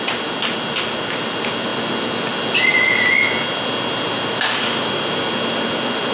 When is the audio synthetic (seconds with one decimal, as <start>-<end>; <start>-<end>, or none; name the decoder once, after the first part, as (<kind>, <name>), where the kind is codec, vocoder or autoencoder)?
none